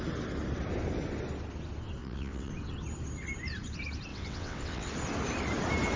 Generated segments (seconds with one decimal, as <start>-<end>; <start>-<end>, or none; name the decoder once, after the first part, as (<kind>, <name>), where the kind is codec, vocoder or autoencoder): 2.0-2.5 (vocoder, WaveNeXt); 4.1-4.9